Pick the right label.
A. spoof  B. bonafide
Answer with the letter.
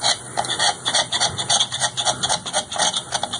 B